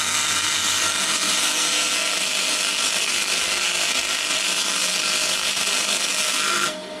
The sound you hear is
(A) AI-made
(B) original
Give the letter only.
A